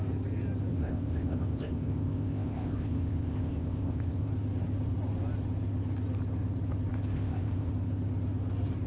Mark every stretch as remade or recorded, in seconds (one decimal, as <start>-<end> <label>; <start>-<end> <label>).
0.0-0.7 recorded; 0.7-4.3 remade; 4.3-7.1 recorded; 7.1-7.7 remade; 7.7-8.9 recorded